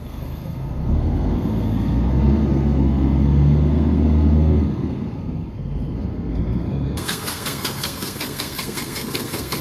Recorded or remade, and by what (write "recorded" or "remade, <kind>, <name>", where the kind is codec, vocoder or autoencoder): remade, codec, SNAC